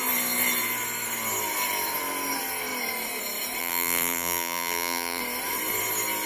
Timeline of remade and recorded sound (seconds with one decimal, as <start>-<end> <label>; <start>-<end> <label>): 0.0-3.6 recorded; 3.6-5.2 remade; 5.2-6.3 recorded